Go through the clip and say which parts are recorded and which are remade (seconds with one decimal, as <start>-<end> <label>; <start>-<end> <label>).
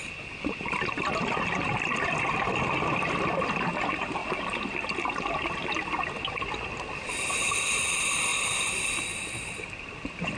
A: 0.0-10.4 recorded